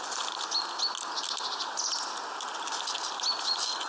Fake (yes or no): no